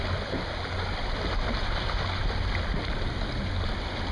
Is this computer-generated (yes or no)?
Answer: no